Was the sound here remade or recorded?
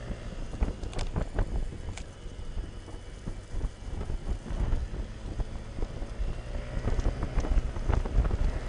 recorded